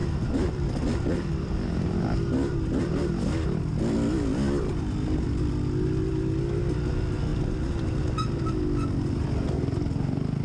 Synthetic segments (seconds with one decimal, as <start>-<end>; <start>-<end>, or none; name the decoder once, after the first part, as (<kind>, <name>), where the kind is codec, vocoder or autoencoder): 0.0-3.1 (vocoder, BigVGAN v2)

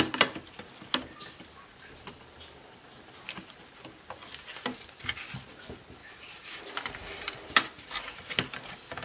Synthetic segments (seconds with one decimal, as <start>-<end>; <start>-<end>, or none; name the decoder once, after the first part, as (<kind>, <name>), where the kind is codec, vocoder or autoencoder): 6.0-7.8 (vocoder, BigVGAN v2)

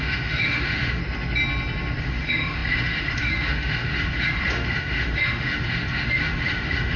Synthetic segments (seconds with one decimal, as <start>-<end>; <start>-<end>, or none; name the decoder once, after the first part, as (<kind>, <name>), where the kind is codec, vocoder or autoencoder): 0.0-1.0 (autoencoder, DAC-VAE); 2.0-7.0

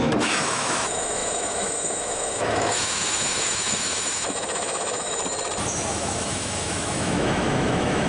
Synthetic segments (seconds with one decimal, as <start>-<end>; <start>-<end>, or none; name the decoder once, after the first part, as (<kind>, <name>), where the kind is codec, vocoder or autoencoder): 0.0-5.2 (autoencoder, DAC-VAE); 5.9-8.1

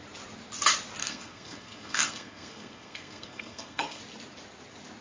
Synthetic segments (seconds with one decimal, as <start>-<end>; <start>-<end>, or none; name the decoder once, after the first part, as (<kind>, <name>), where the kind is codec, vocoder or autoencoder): 1.0-4.0 (codec, SNAC)

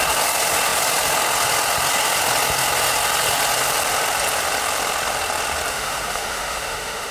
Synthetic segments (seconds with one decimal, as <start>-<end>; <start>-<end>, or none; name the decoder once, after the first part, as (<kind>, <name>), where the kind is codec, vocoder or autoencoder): 5.7-7.1 (autoencoder, DAC-VAE)

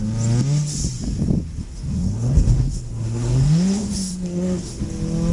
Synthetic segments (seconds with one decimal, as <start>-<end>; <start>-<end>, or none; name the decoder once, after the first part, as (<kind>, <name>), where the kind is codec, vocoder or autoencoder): 1.6-4.8 (codec, SNAC)

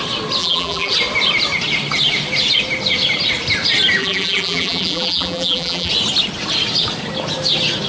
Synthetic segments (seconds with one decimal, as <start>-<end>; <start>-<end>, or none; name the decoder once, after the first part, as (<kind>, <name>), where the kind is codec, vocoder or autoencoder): 0.4-0.9 (vocoder, BigVGAN v2); 4.0-5.9